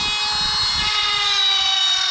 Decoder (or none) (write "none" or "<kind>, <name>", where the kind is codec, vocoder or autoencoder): none